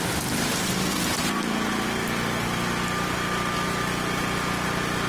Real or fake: real